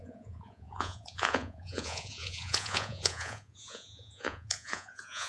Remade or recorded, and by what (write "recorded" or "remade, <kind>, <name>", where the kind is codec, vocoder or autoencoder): remade, vocoder, Vocos